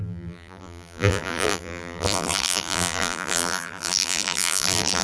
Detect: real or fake fake